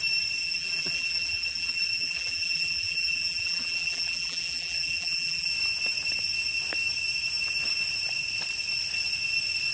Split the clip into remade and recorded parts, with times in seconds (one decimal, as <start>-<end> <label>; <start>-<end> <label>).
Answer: 0.0-0.4 recorded; 0.4-5.5 remade; 5.5-9.7 recorded